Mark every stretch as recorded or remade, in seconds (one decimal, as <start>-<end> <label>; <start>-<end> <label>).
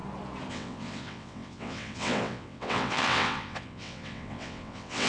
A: 0.0-0.5 recorded; 0.5-5.1 remade